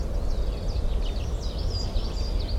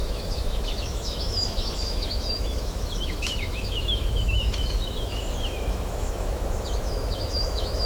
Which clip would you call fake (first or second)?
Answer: second